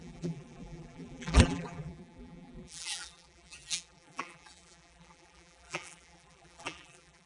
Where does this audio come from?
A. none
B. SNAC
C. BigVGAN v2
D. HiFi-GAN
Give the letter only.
C